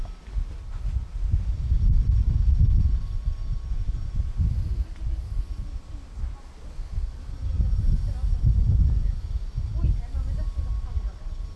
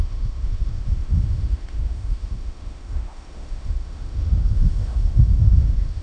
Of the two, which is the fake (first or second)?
second